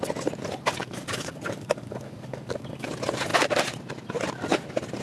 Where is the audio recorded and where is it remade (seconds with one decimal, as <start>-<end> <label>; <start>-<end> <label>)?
0.0-0.8 recorded; 0.8-2.9 remade; 2.9-5.0 recorded